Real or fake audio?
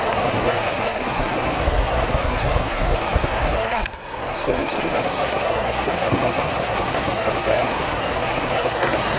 fake